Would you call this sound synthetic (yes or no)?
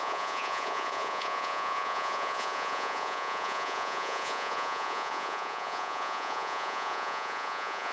yes